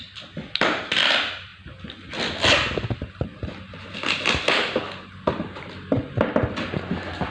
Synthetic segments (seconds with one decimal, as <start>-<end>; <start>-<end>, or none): none